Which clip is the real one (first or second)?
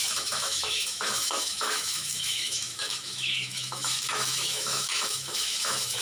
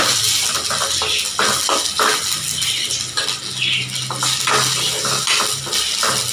second